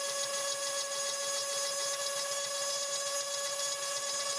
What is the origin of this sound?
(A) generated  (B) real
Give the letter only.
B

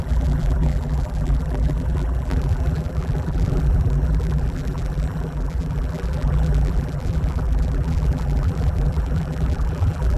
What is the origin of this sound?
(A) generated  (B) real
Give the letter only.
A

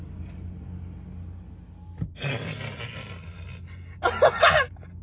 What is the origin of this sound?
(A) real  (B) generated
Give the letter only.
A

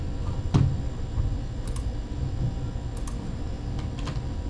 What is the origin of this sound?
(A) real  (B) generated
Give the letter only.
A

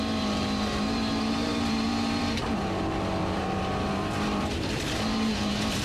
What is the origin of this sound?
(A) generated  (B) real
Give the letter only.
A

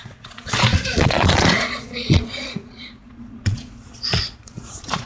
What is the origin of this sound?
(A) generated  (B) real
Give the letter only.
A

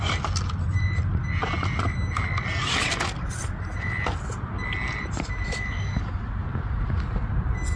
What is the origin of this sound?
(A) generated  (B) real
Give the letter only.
B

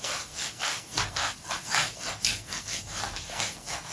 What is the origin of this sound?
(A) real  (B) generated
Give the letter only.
B